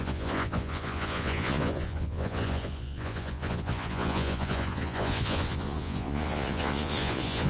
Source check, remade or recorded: remade